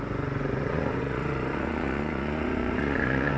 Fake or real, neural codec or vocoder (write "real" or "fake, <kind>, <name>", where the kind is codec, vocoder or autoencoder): fake, vocoder, Vocos